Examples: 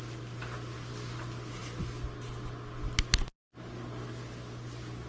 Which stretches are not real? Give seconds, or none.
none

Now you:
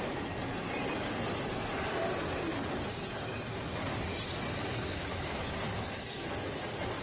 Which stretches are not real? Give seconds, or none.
4.7-5.5 (autoencoder, DAC-VAE)